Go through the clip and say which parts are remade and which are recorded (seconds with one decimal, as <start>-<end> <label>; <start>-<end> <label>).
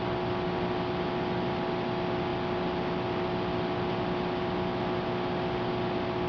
0.0-6.3 recorded